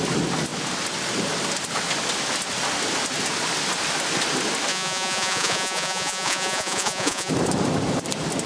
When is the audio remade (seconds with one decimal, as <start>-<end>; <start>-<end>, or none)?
4.7-7.3